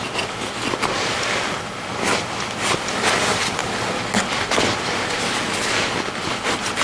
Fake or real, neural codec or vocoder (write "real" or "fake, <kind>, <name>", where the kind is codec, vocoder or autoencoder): real